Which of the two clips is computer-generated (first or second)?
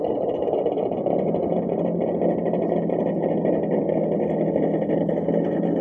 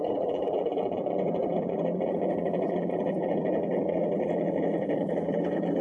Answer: second